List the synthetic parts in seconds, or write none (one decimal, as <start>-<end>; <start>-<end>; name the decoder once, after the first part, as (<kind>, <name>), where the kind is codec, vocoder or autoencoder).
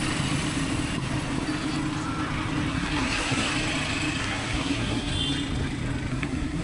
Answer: 2.7-3.5 (codec, SNAC); 4.2-5.1; 6.1-6.6